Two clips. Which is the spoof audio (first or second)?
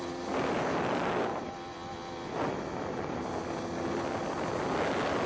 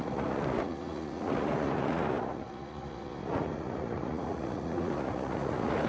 second